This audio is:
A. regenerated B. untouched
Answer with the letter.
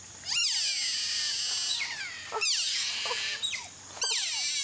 B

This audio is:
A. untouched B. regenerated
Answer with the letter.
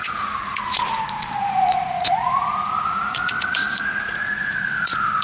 B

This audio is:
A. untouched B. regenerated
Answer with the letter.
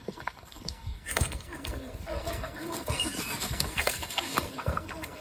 B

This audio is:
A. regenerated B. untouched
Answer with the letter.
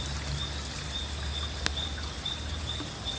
B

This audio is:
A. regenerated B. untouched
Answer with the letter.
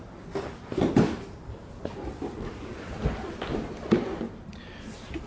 B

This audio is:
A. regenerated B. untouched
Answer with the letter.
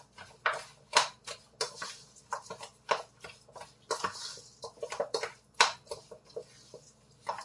B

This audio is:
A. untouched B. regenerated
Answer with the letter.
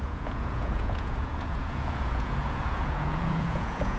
B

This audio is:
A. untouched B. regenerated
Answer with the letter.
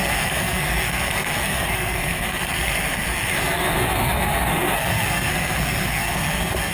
B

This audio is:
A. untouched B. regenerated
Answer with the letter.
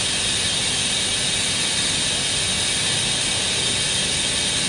A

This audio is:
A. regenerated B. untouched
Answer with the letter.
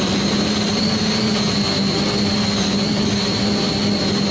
B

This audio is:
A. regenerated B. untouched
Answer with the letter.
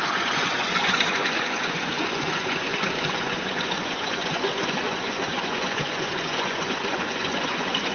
A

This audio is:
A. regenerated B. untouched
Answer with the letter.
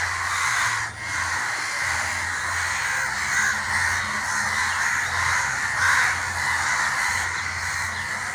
B